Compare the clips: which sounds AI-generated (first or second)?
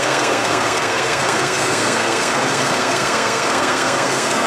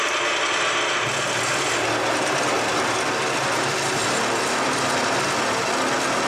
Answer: first